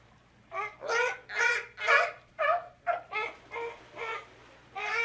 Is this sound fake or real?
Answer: real